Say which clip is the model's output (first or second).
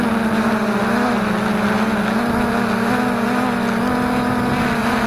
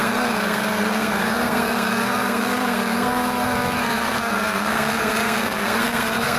second